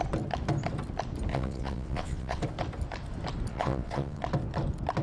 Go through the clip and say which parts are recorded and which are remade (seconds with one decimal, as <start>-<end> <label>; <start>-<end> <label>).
0.0-1.3 recorded; 1.3-2.4 remade; 2.4-3.5 recorded; 3.5-4.2 remade; 4.2-5.0 recorded